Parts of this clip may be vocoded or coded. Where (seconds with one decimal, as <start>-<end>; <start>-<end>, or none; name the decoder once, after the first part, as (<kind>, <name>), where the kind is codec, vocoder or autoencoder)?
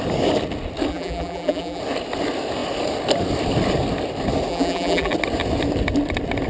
0.9-1.8 (vocoder, BigVGAN v2); 4.5-5.1